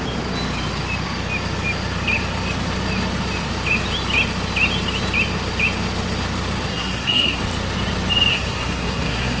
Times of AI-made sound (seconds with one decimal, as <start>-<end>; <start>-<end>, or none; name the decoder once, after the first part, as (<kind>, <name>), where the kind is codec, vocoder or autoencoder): 6.7-7.4 (codec, SNAC); 8.3-9.4